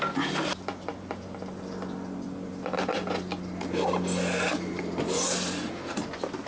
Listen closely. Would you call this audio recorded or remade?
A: recorded